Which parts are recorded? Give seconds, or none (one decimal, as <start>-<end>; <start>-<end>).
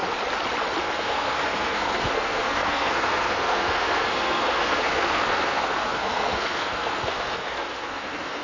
0.0-0.8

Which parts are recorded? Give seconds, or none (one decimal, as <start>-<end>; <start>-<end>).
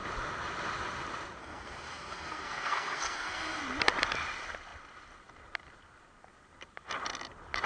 0.0-1.4; 3.6-7.7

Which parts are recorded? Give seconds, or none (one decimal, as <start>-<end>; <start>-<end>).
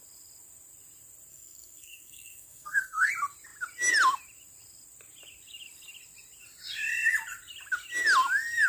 0.0-1.3; 3.1-8.7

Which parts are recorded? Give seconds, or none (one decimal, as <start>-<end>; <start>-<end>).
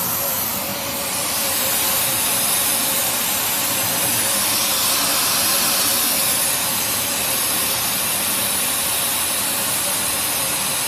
0.0-10.9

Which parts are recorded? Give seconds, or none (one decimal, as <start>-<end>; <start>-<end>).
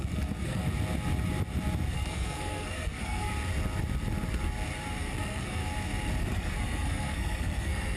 0.6-1.9; 3.3-5.0; 5.6-6.2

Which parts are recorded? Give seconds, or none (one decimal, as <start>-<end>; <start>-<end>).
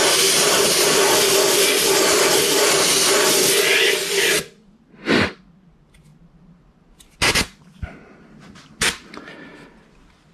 0.0-10.3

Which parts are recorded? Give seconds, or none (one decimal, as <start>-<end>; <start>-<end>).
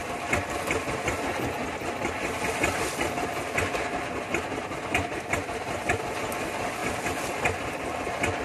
0.0-8.4